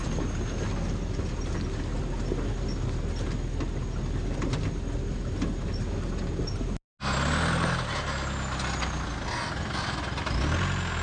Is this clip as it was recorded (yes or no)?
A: yes